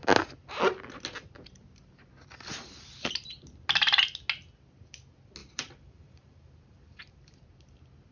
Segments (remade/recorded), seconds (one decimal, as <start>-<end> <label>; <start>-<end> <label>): 0.0-5.4 recorded; 5.4-7.1 remade; 7.1-8.1 recorded